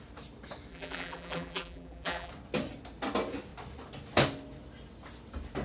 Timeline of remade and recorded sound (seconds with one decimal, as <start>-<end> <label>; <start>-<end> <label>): 0.0-0.7 recorded; 0.7-2.3 remade; 2.3-5.6 recorded